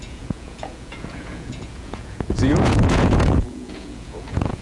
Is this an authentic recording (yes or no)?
no